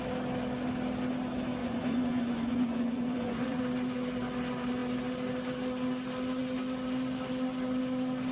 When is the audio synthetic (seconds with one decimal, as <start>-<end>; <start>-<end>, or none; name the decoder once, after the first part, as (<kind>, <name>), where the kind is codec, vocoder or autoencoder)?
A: 1.6-3.6 (vocoder, Vocos)